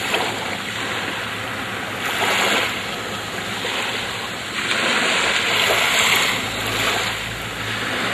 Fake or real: real